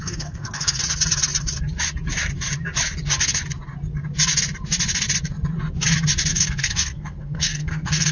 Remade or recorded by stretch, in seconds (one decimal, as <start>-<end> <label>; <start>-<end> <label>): 0.0-0.8 remade; 0.8-6.3 recorded; 6.3-8.1 remade